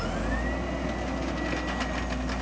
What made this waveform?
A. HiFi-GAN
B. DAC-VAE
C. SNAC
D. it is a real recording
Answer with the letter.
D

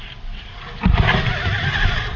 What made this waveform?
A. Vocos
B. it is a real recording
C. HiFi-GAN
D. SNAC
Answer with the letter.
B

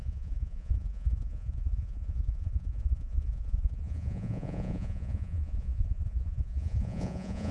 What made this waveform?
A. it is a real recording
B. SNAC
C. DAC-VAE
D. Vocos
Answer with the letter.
D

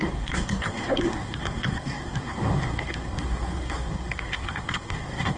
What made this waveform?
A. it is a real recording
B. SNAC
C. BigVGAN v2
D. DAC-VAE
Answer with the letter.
B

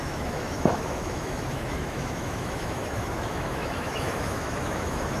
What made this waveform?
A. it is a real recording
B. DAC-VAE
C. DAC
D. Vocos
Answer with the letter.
B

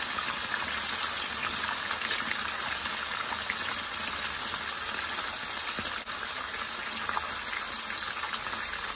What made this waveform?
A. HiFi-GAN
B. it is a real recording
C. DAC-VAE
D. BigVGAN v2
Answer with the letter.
B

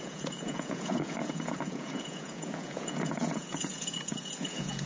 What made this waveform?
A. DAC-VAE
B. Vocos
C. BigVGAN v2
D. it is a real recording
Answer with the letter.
B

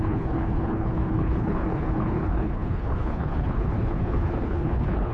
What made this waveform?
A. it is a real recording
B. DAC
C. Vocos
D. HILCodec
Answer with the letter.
D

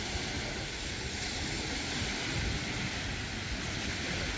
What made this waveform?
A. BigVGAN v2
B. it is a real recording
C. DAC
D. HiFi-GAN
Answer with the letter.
B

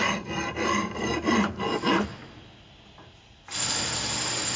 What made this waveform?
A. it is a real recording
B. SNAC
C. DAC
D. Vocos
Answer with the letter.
A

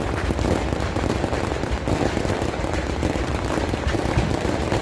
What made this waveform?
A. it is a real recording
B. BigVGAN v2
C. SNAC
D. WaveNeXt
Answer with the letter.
A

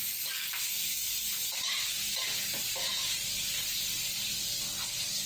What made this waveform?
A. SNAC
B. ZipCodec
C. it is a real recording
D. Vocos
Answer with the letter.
C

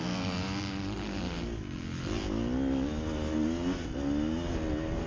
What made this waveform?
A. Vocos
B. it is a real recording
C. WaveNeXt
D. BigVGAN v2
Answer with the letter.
B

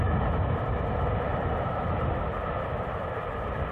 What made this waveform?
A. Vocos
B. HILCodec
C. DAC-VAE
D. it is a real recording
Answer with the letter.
D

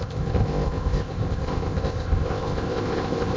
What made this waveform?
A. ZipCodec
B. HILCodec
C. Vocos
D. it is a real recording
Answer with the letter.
A